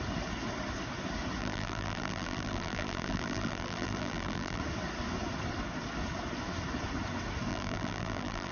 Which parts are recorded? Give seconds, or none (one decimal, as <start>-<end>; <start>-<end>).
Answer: 0.0-1.4; 4.6-7.5